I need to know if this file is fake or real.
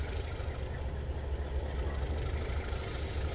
real